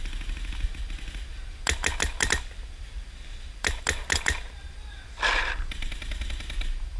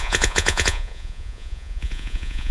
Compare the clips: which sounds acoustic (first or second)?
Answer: first